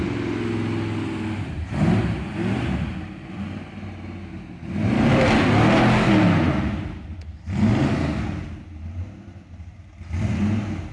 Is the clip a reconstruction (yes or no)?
no